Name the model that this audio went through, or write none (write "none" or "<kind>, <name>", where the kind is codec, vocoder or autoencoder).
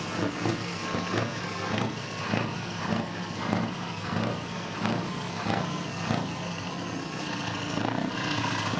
codec, SNAC